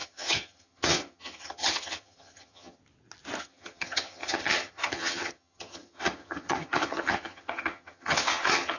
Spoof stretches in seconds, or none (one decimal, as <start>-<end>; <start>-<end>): 0.0-2.8; 3.4-8.8